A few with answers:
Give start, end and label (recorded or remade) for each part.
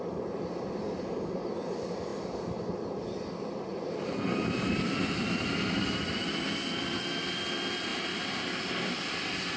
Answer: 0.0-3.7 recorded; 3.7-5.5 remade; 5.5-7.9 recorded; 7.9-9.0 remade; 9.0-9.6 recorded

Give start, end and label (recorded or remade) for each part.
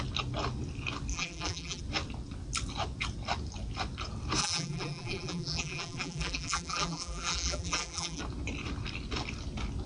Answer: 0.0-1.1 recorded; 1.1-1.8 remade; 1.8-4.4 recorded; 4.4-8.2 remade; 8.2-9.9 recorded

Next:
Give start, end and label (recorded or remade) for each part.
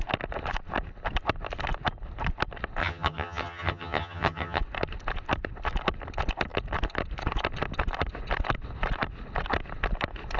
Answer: 0.0-2.8 recorded; 2.8-4.6 remade; 4.6-10.4 recorded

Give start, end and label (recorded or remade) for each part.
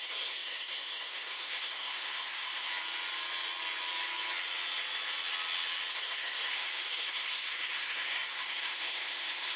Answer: 0.0-2.7 remade; 2.7-5.9 recorded; 5.9-9.6 remade